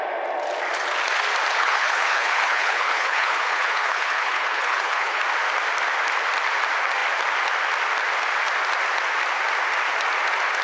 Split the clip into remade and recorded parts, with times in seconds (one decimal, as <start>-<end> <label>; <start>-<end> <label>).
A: 0.0-1.5 recorded; 1.5-5.2 remade; 5.2-10.6 recorded